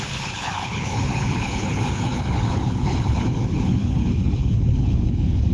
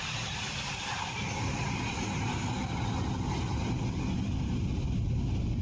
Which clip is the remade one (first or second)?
first